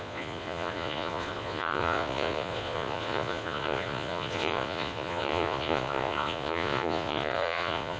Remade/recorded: remade